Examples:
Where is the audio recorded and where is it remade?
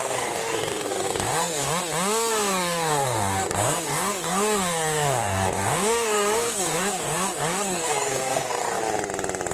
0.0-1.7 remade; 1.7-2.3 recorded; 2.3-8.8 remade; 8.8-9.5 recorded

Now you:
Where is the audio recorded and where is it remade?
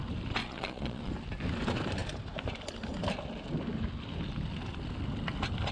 0.0-0.4 recorded; 0.4-1.1 remade; 1.1-5.7 recorded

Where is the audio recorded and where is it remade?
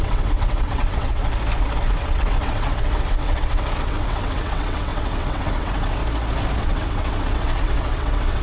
0.0-1.2 remade; 1.2-1.8 recorded; 1.8-6.0 remade; 6.0-6.6 recorded; 6.6-8.4 remade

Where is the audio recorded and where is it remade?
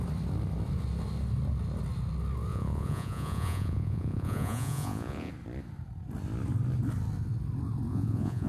0.0-2.5 recorded; 2.5-5.3 remade; 5.3-7.9 recorded; 7.9-8.5 remade